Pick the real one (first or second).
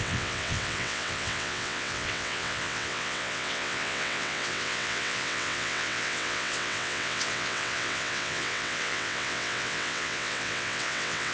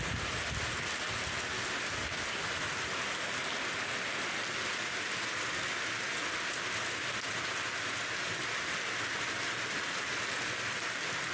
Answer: second